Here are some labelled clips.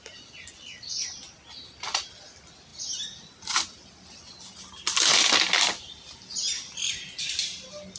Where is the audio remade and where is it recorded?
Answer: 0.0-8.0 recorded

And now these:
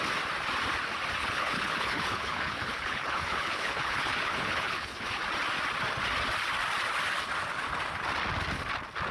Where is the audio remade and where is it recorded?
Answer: 0.0-1.2 recorded; 1.2-5.2 remade; 5.2-9.1 recorded

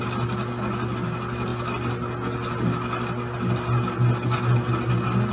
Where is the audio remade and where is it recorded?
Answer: 0.0-5.3 recorded